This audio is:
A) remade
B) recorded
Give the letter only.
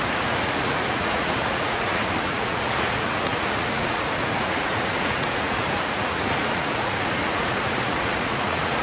A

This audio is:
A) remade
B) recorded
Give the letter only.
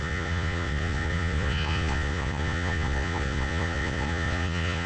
A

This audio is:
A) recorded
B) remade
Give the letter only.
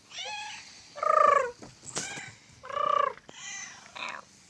A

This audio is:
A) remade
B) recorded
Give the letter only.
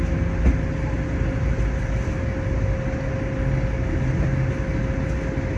B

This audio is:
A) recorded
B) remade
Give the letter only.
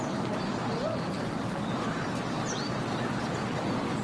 A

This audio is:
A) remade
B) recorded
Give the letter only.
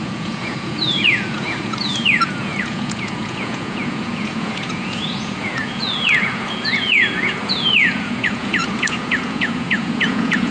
A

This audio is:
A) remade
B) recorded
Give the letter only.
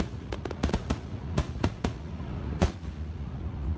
A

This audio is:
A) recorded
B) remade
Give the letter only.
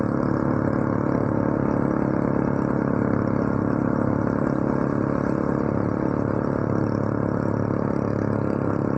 A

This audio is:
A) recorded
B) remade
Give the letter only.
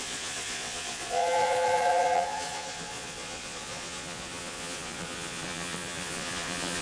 B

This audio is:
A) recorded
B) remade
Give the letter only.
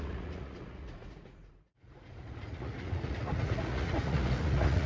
B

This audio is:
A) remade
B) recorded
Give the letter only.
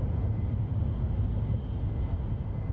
B